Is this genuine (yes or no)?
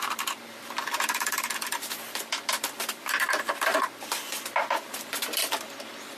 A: no